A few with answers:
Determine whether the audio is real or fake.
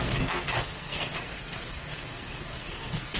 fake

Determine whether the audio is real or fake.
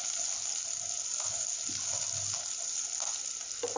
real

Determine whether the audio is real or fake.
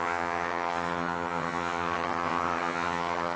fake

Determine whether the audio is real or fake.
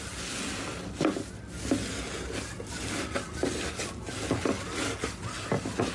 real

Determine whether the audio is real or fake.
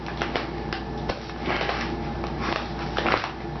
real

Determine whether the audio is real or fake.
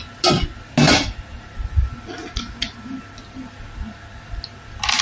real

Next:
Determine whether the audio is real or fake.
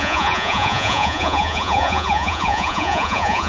fake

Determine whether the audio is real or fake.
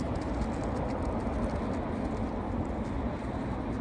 real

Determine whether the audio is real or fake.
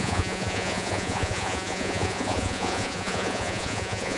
fake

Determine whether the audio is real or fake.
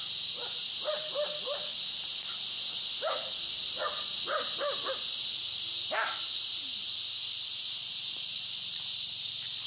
real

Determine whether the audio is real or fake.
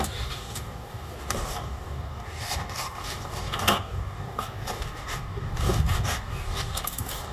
fake